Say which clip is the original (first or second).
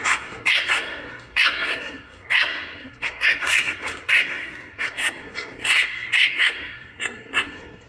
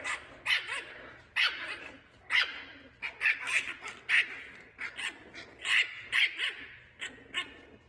second